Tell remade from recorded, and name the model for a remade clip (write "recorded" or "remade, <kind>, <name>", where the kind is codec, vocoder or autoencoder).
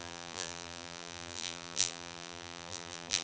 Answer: remade, vocoder, BigVGAN v2